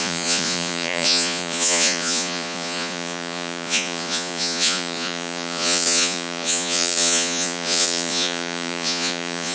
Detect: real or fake fake